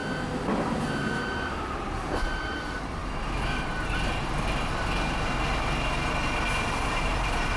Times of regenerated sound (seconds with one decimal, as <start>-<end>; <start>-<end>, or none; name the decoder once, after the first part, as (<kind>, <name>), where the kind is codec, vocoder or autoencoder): 1.0-3.0 (vocoder, BigVGAN v2); 6.9-7.6